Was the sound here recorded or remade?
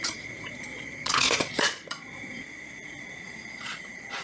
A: remade